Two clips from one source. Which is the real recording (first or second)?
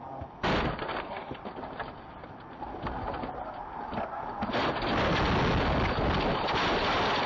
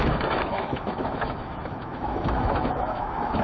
first